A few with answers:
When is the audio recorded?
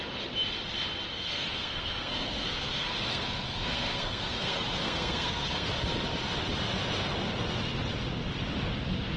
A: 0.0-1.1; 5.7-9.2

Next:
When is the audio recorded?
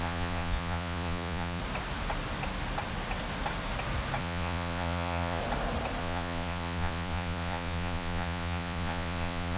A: 1.6-4.2; 5.4-6.0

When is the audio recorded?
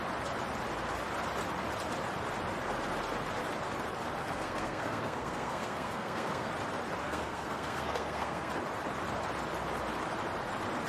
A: 0.0-4.2; 6.5-7.0; 8.5-10.9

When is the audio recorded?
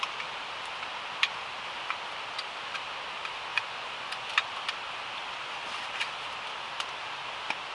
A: 0.0-3.5; 4.5-7.7